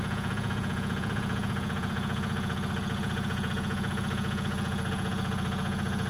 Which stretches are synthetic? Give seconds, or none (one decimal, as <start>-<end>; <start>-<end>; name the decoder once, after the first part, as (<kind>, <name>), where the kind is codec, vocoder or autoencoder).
0.0-6.1 (vocoder, Vocos)